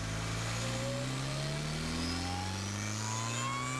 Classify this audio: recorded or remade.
recorded